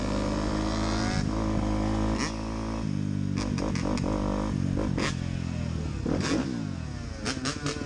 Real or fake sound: real